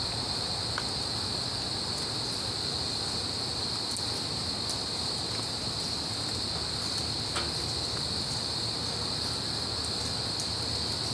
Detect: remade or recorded recorded